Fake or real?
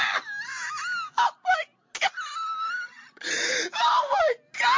real